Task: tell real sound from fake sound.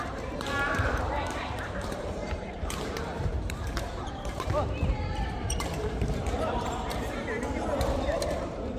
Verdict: fake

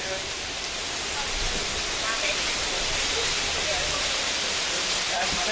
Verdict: fake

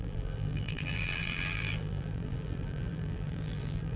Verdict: fake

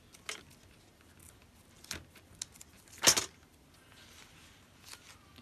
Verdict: real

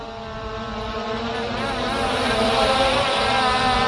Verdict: real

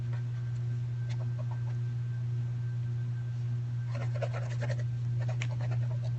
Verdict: real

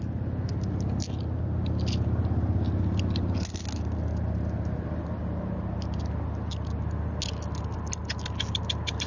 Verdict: real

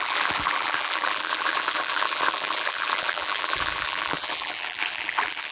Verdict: fake